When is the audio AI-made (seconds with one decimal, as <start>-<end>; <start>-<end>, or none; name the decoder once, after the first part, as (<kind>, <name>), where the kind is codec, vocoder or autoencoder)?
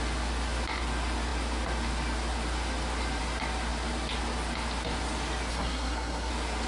5.5-6.3 (codec, SNAC)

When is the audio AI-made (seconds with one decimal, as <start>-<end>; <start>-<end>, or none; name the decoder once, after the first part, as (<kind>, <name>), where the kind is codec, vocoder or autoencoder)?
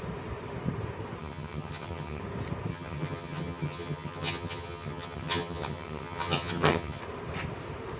1.2-2.2 (vocoder, HiFi-GAN); 2.7-7.0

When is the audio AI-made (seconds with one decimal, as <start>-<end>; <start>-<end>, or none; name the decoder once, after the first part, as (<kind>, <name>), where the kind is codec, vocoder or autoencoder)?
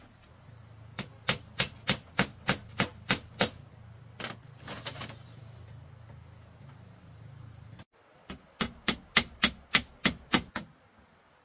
none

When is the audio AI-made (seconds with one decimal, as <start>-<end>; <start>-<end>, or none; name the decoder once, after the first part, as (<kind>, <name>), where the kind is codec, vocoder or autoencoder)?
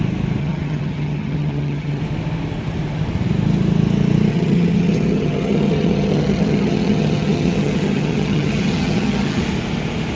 0.4-2.0 (vocoder, HiFi-GAN); 4.3-9.4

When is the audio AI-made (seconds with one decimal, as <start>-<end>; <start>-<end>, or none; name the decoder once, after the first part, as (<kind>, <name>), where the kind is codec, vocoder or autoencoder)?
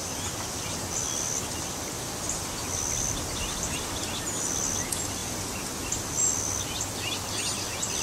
none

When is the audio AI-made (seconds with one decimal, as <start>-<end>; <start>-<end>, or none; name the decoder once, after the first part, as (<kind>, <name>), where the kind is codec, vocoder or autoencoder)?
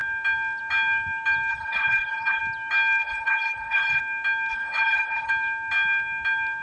1.5-2.4 (codec, HILCodec); 3.0-4.0; 4.5-5.3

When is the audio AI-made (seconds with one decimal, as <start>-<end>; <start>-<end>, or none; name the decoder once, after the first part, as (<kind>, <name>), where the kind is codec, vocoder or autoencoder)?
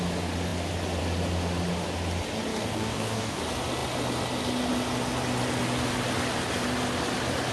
2.5-3.4 (codec, DAC)